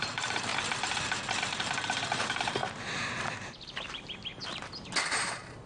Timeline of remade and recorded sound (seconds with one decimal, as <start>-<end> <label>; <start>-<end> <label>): 0.0-0.5 remade; 0.5-2.2 recorded; 2.2-2.6 remade; 2.6-3.9 recorded; 3.9-4.3 remade; 4.3-5.0 recorded; 5.0-5.7 remade